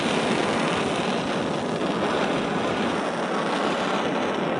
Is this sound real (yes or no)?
yes